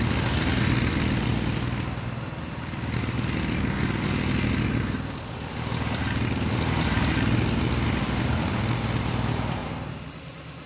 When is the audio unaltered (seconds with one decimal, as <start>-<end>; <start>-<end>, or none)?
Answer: 0.0-9.6